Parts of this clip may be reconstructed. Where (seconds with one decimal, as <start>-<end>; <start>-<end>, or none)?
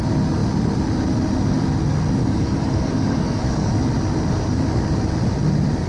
2.2-3.7